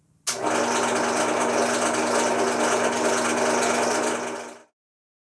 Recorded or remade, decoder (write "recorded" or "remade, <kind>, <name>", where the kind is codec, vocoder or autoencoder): recorded